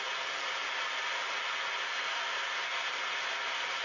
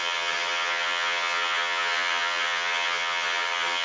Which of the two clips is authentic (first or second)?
first